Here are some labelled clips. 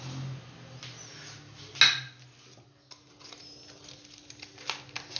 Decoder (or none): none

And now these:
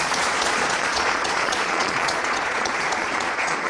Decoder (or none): vocoder, Vocos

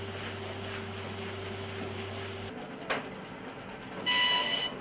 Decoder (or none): none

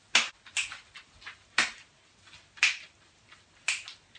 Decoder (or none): none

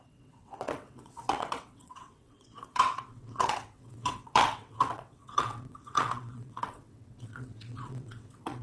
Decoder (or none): vocoder, WaveNeXt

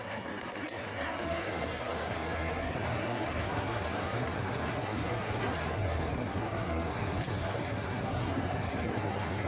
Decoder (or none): codec, SNAC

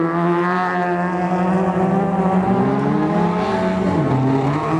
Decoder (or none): none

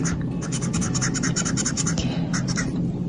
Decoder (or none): none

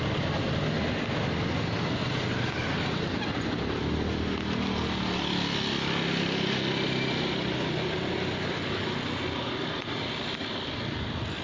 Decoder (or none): none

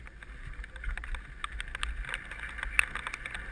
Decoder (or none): none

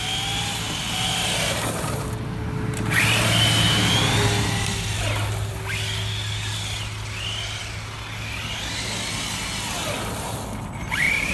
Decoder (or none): none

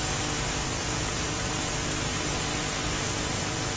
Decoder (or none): vocoder, BigVGAN v2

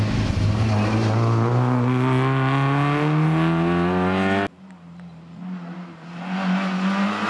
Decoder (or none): none